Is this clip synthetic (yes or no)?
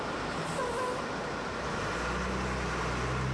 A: no